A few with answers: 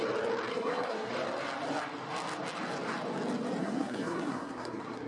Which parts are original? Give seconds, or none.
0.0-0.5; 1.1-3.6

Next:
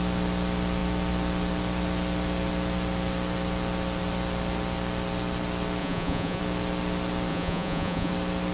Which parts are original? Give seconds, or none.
0.0-5.8; 6.4-7.3; 8.1-8.5

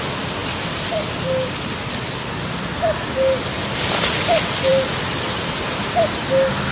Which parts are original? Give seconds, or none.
0.0-6.7

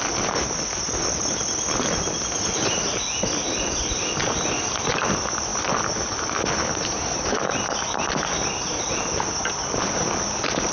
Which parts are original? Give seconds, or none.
0.0-10.7

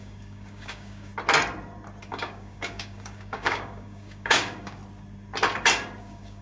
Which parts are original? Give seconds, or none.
1.1-2.1; 4.8-6.0

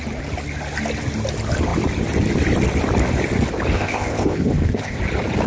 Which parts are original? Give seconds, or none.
0.0-3.7; 5.0-5.5